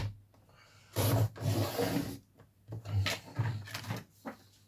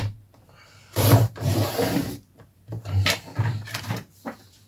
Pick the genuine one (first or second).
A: first